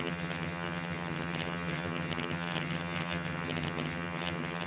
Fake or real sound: fake